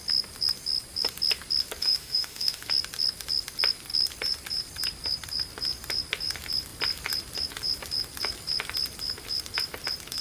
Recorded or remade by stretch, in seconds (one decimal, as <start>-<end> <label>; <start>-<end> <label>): 0.0-1.8 recorded; 1.8-2.7 remade; 2.7-10.2 recorded

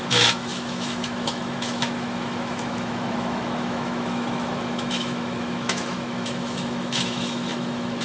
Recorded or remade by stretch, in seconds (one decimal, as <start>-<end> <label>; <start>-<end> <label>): 0.0-8.0 remade

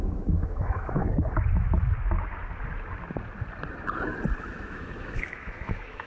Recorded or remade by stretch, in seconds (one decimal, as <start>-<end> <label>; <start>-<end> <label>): 0.0-1.0 remade; 1.0-4.4 recorded; 4.4-6.1 remade

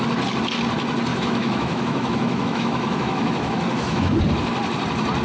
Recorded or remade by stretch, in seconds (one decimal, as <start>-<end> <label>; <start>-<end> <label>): 0.0-1.1 recorded; 1.1-4.2 remade; 4.2-5.2 recorded

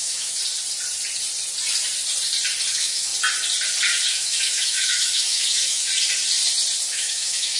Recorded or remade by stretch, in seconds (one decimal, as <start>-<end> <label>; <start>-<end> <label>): 0.0-0.4 remade; 0.4-2.7 recorded; 2.7-3.1 remade; 3.1-4.1 recorded; 4.1-5.9 remade; 5.9-6.9 recorded; 6.9-7.6 remade